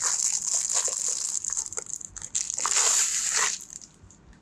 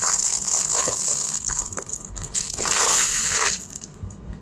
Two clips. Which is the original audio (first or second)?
first